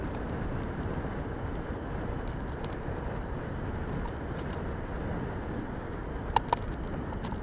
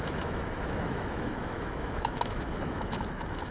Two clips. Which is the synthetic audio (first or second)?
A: second